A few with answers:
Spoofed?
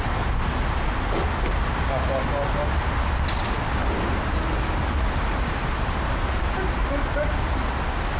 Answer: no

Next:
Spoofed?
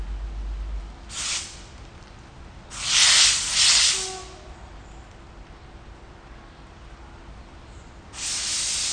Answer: no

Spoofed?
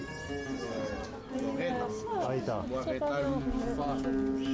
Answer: no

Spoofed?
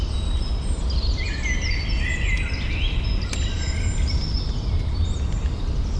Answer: no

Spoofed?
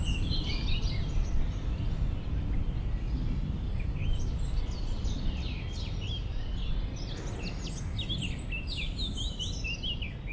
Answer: no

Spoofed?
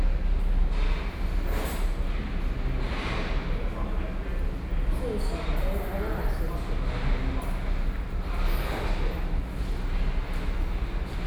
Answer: no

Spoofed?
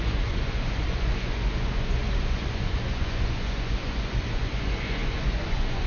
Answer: yes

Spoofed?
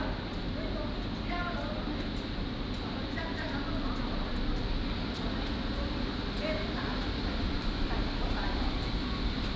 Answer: no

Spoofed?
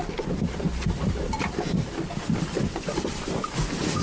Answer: no